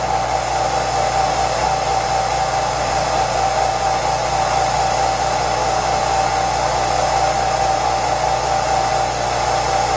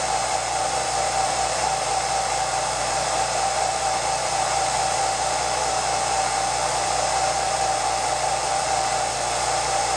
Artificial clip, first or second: second